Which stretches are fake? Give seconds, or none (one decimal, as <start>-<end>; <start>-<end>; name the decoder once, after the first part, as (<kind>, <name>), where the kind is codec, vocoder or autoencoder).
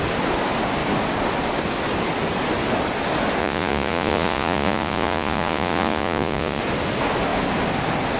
3.4-6.6 (vocoder, Vocos)